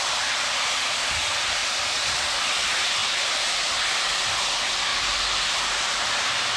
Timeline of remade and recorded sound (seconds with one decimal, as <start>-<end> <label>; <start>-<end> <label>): 0.0-3.0 recorded; 3.0-3.5 remade; 3.5-4.9 recorded; 4.9-6.1 remade; 6.1-6.6 recorded